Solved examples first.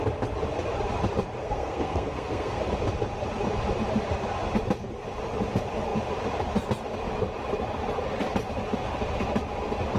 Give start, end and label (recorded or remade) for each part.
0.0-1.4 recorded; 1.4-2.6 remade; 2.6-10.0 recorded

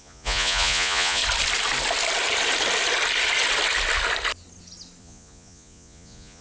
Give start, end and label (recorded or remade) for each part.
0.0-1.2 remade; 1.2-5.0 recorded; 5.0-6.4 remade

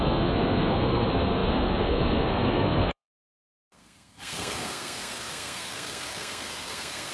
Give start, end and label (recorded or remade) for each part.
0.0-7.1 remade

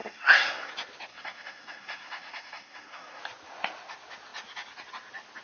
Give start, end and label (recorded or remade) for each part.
0.0-0.7 remade; 0.7-1.1 recorded; 1.1-3.2 remade; 3.2-5.4 recorded

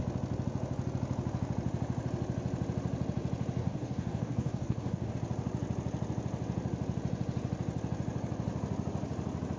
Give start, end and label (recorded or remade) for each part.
0.0-3.6 recorded; 3.6-5.1 remade; 5.1-9.6 recorded